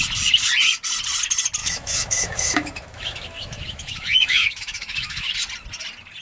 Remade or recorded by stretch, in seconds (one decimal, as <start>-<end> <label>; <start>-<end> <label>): 0.0-1.6 recorded; 1.6-5.3 remade; 5.3-6.2 recorded